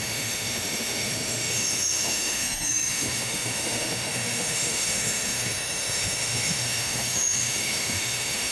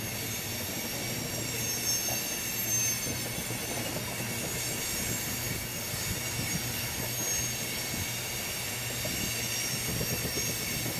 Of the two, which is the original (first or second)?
second